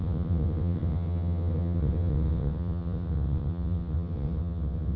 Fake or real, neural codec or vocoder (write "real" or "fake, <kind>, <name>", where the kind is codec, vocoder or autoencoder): fake, vocoder, WaveNeXt